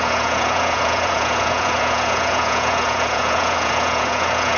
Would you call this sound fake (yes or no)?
yes